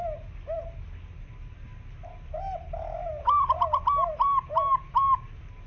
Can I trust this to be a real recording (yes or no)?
yes